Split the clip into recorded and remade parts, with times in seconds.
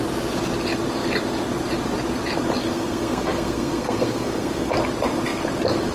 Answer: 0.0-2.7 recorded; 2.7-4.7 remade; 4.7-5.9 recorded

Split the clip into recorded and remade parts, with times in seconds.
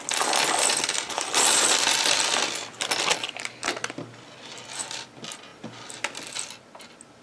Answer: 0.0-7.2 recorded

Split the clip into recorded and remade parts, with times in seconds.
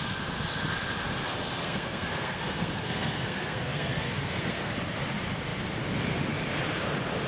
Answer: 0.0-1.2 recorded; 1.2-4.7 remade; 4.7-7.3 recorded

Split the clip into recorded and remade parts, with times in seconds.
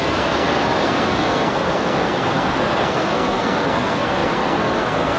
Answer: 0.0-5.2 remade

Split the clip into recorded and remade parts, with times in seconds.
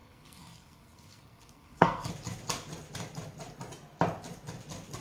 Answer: 0.0-2.1 remade; 2.1-5.0 recorded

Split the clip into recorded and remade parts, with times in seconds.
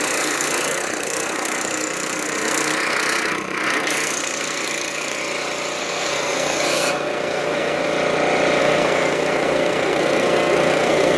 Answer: 0.0-5.2 remade; 5.2-5.8 recorded; 5.8-7.9 remade; 7.9-8.6 recorded; 8.6-11.2 remade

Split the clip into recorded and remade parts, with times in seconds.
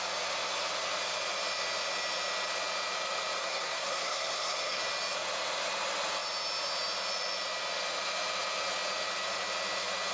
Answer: 0.0-3.4 recorded; 3.4-4.8 remade; 4.8-10.1 recorded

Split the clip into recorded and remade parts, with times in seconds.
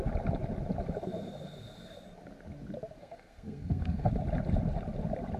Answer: 0.0-3.0 recorded; 3.0-4.1 remade; 4.1-5.4 recorded